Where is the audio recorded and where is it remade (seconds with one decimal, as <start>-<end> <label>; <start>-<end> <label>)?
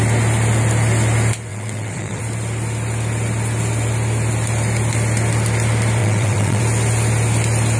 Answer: 0.0-1.5 recorded; 1.5-2.2 remade; 2.2-6.0 recorded; 6.0-6.6 remade; 6.6-7.8 recorded